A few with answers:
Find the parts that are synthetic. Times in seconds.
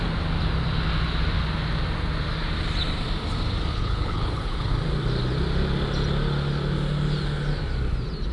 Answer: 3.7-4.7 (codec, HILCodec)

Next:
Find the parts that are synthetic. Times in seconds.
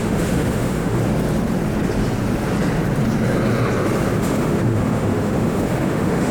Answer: 0.0-1.0 (autoencoder, DAC-VAE); 4.2-6.3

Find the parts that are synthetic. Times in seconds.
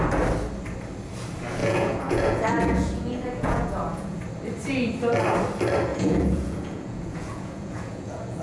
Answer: 1.6-4.2 (vocoder, Vocos); 5.9-8.4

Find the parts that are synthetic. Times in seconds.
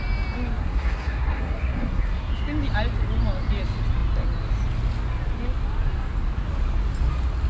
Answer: 0.6-2.3 (codec, SNAC)